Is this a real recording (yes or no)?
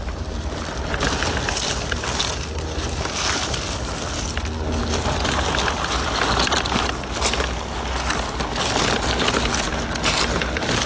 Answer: yes